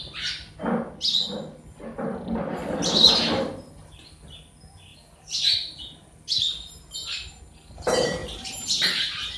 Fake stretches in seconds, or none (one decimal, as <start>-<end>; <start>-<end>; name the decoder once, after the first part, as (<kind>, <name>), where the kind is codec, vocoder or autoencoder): 2.6-4.1 (vocoder, BigVGAN v2); 4.9-7.4; 8.2-9.4